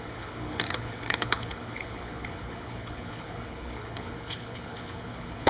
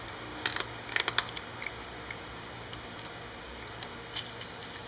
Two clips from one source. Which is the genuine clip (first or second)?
second